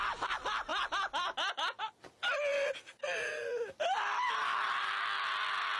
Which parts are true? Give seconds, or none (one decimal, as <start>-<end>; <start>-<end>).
0.0-5.8